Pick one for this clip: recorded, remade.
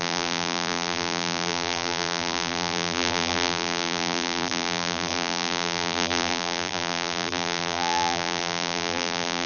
remade